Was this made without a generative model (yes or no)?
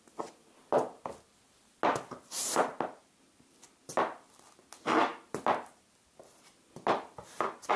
yes